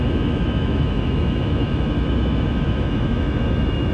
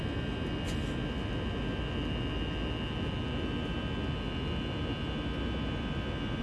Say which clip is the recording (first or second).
second